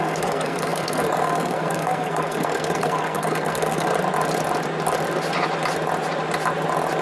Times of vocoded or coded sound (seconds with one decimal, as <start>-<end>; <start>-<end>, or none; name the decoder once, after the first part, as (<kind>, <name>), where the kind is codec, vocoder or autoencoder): 0.0-3.9 (codec, SNAC)